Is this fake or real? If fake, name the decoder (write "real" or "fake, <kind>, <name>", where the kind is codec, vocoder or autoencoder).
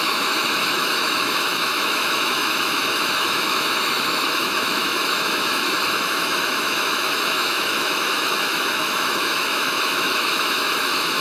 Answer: fake, autoencoder, DAC-VAE